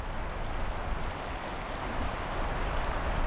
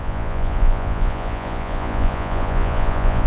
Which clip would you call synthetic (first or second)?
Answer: second